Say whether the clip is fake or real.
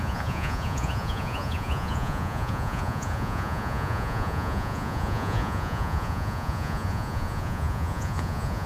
fake